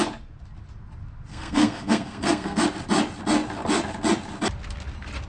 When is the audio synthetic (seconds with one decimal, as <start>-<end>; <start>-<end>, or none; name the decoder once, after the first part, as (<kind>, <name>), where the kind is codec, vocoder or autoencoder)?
1.3-2.6 (codec, SNAC)